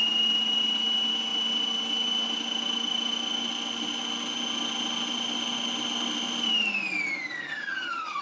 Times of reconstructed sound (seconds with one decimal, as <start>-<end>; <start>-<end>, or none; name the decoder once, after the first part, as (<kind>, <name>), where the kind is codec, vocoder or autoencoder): 7.4-8.2 (vocoder, HiFi-GAN)